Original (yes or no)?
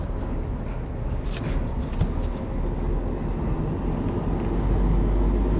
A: yes